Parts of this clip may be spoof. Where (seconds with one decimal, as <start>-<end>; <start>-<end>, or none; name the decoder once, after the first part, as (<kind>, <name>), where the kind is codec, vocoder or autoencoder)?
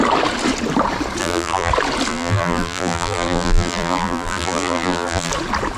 1.2-1.7 (vocoder, BigVGAN v2); 2.1-5.3